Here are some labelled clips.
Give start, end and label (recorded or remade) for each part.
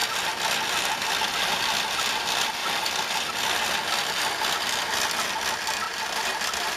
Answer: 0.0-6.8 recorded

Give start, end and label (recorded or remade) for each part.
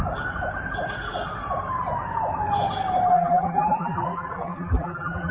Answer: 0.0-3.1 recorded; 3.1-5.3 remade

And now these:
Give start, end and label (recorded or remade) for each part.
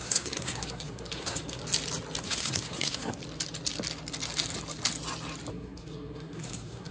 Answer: 0.0-1.6 remade; 1.6-2.2 recorded; 2.2-3.2 remade; 3.2-5.5 recorded; 5.5-6.9 remade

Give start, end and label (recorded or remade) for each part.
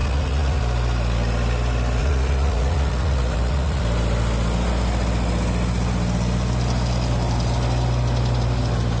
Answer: 0.0-0.6 remade; 0.6-2.0 recorded; 2.0-3.8 remade; 3.8-9.0 recorded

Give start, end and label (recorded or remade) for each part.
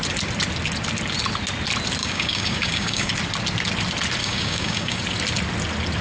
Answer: 0.0-2.0 recorded; 2.0-3.1 remade; 3.1-4.2 recorded; 4.2-5.0 remade; 5.0-6.0 recorded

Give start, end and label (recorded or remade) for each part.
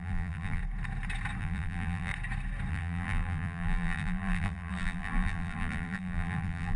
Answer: 0.0-0.6 remade; 0.6-1.4 recorded; 1.4-2.1 remade; 2.1-2.7 recorded; 2.7-6.8 remade